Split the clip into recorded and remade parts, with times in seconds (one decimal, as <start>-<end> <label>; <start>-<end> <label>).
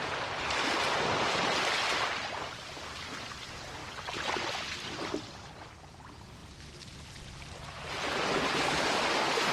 0.0-9.5 remade